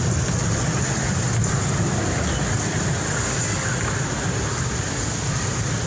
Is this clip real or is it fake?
real